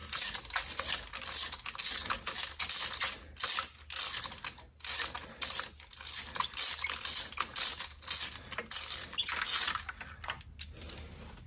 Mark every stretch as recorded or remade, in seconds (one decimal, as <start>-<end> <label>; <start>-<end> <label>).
0.0-11.5 recorded